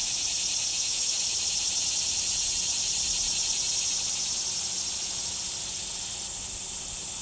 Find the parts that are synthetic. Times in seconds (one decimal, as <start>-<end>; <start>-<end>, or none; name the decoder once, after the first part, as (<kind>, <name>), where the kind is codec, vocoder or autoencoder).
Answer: 0.7-1.2 (autoencoder, DAC-VAE)